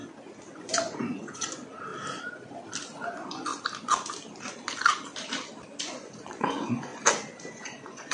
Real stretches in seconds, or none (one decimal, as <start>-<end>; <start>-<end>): 0.0-0.5; 1.9-3.0; 3.5-5.8; 6.9-7.5